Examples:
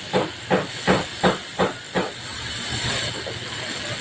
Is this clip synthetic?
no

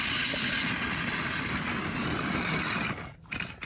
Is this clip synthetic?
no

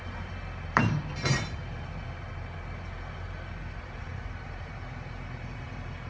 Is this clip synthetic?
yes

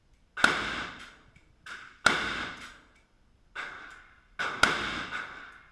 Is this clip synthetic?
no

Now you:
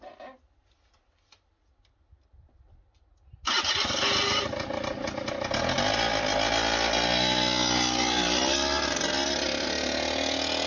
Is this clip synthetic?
no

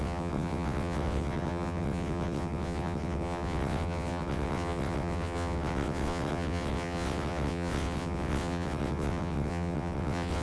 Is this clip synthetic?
yes